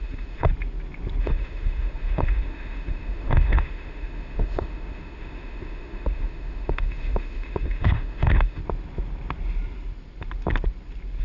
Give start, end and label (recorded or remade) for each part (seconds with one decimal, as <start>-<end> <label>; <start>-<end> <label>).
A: 0.0-0.5 remade; 0.5-1.2 recorded; 1.2-8.6 remade; 8.6-11.2 recorded